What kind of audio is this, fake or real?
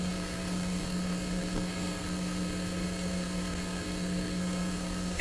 fake